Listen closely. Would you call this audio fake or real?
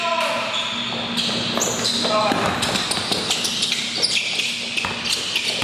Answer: real